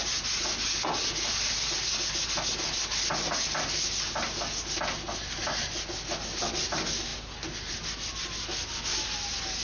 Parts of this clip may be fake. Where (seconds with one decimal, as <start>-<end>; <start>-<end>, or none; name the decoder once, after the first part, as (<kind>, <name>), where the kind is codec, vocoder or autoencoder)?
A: none